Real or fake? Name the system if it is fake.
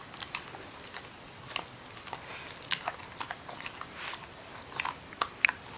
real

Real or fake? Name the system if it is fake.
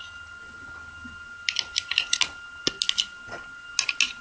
real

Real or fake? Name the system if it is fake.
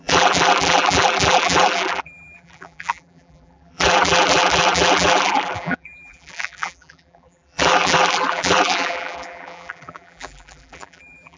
fake, vocoder, BigVGAN v2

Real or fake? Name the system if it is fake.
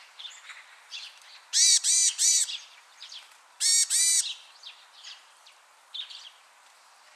fake, vocoder, BigVGAN v2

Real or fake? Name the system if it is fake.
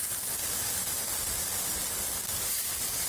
real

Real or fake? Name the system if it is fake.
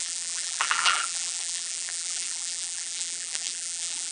fake, vocoder, BigVGAN v2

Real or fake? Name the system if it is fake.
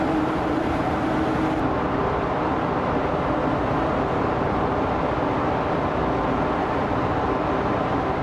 real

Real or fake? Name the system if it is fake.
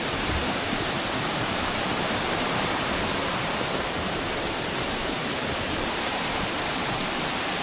fake, vocoder, BigVGAN v2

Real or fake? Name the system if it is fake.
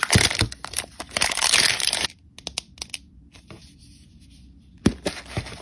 real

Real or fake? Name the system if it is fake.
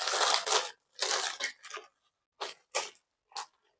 real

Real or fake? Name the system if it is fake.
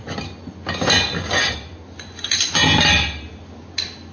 real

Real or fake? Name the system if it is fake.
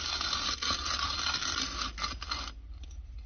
real